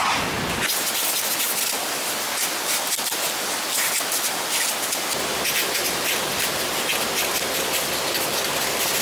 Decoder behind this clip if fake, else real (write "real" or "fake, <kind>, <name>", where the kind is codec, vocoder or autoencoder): real